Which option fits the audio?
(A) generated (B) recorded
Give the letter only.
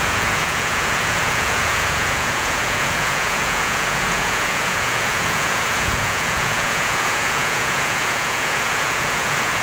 A